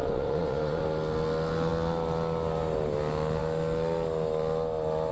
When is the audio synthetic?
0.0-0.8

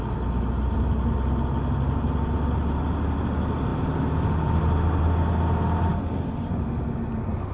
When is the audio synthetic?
none

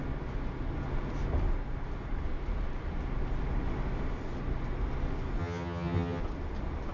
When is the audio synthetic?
5.4-6.2

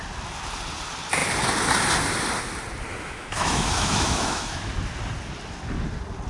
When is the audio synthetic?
2.9-4.7

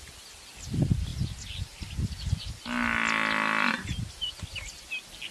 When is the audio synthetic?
none

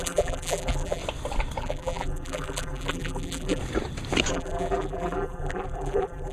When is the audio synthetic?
0.0-1.0; 1.6-3.6; 4.3-6.3